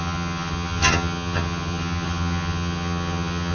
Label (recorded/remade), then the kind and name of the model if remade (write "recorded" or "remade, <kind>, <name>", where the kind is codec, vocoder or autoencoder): remade, vocoder, HiFi-GAN